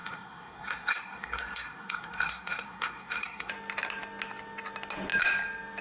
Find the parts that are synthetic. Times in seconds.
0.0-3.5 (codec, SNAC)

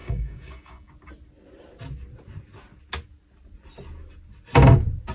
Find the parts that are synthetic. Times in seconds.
0.0-0.9 (codec, DAC)

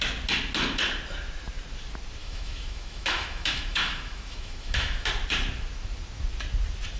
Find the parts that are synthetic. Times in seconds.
2.2-5.1 (autoencoder, DAC-VAE)

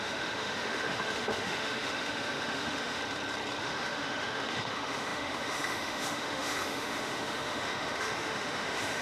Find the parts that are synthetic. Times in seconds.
0.0-3.0 (autoencoder, DAC-VAE); 3.6-9.0

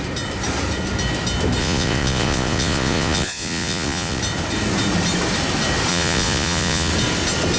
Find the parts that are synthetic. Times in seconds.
1.6-4.2 (vocoder, Vocos); 5.9-6.9

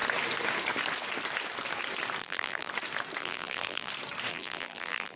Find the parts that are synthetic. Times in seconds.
2.2-2.7 (vocoder, BigVGAN v2); 3.2-3.9; 4.3-5.2